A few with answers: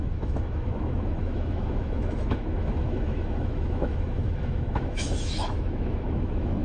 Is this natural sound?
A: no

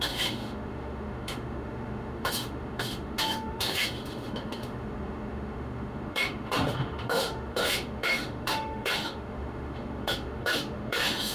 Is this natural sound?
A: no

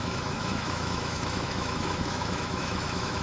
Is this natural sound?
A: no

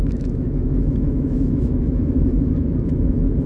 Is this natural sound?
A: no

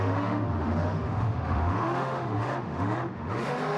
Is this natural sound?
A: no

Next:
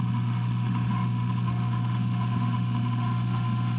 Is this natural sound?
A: no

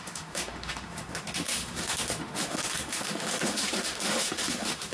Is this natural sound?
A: no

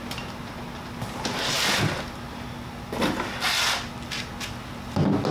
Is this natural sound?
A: yes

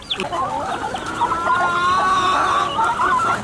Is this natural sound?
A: yes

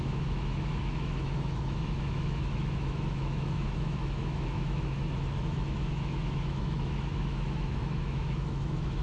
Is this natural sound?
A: no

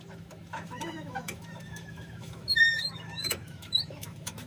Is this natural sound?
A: no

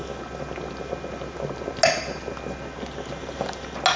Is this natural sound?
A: yes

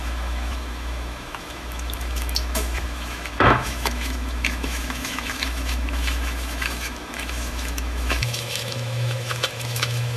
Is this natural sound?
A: no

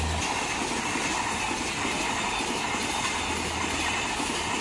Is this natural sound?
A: yes